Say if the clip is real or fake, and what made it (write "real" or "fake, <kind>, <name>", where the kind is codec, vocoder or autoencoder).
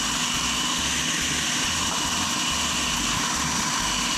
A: real